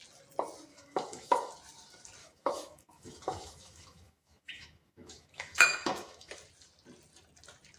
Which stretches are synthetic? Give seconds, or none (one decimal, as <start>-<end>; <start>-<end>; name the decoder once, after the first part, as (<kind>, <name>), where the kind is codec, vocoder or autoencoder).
0.7-1.5 (autoencoder, DAC-VAE); 2.2-6.3

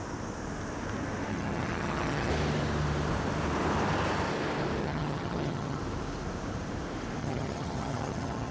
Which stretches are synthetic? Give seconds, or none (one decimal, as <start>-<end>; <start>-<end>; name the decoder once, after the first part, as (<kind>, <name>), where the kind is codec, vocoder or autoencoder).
1.3-2.3 (vocoder, HiFi-GAN); 4.8-5.8; 7.2-8.5